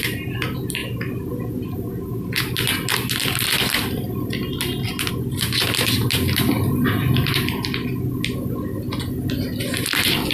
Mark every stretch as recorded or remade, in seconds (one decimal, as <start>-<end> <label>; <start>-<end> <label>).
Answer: 0.0-10.3 recorded